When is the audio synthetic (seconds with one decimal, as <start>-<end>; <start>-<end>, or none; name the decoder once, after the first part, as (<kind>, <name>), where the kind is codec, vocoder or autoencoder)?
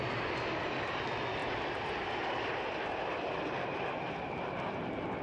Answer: none